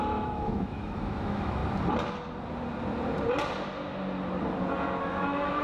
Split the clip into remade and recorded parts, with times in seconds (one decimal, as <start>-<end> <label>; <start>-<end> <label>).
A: 0.0-1.6 remade; 1.6-5.0 recorded; 5.0-5.6 remade